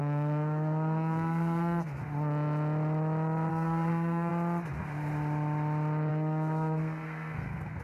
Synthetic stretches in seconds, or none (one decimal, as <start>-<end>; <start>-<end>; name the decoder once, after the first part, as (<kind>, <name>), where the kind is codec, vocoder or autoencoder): 0.0-2.0 (codec, SNAC); 3.5-4.3; 6.1-7.8